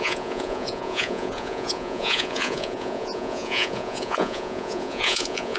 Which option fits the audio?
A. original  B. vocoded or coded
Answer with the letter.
B